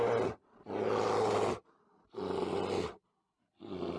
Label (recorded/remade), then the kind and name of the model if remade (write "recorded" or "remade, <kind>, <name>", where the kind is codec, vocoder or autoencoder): recorded